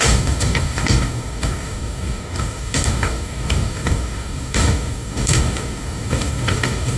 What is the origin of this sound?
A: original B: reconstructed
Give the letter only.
B